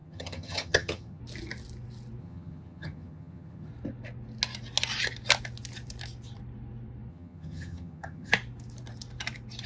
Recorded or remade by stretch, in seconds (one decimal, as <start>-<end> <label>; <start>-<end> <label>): 0.0-1.2 remade; 1.2-2.2 recorded; 2.2-3.7 remade; 3.7-7.1 recorded; 7.1-8.3 remade; 8.3-9.7 recorded